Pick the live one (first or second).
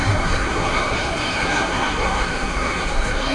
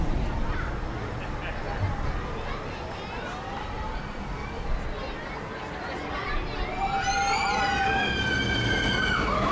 second